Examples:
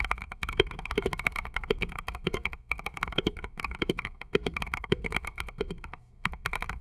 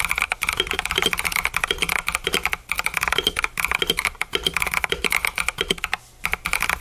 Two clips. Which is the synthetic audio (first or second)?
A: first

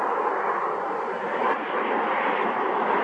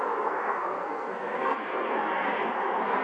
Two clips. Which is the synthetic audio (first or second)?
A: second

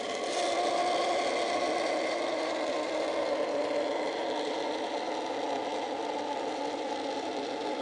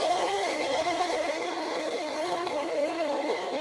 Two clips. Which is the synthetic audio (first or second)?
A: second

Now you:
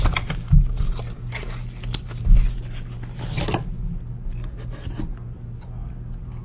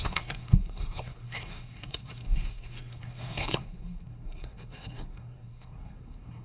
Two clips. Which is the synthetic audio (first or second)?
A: second